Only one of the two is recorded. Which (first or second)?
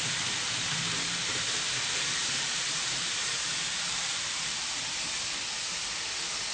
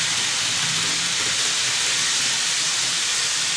second